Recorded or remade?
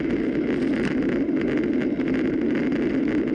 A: recorded